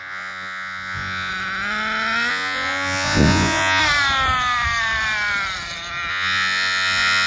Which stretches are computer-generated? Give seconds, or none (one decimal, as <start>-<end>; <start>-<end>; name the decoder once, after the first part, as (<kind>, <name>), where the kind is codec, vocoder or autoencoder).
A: 0.0-1.3 (vocoder, Vocos); 2.3-3.8; 6.1-7.3